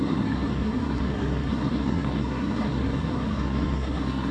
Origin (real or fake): fake